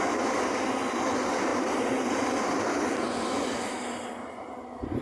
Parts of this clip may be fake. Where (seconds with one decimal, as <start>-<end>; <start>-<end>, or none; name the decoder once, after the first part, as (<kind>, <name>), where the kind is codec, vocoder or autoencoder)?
none